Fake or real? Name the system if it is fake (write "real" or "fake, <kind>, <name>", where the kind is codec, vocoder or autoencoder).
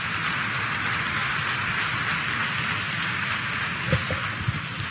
real